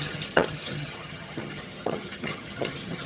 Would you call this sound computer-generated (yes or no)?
yes